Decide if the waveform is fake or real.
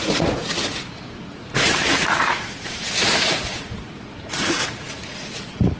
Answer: fake